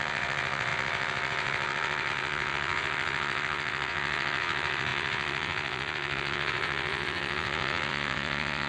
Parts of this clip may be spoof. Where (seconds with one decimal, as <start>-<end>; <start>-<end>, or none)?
0.0-8.7